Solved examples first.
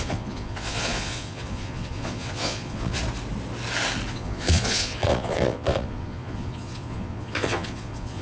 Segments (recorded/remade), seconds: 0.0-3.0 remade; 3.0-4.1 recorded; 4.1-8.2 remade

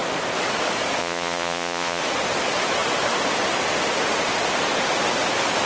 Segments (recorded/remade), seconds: 0.0-1.0 recorded; 1.0-2.0 remade; 2.0-5.7 recorded

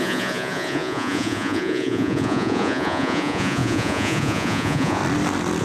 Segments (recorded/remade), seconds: 0.0-5.0 remade; 5.0-5.6 recorded

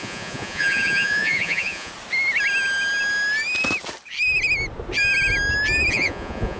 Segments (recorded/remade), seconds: 0.0-1.9 remade; 1.9-5.9 recorded; 5.9-6.6 remade

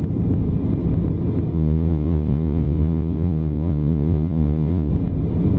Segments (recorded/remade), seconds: 0.0-1.5 recorded; 1.5-4.9 remade; 4.9-5.6 recorded